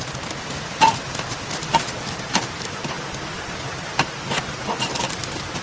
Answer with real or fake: real